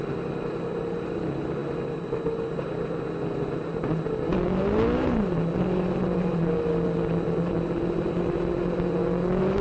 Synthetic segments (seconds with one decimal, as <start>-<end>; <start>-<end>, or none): none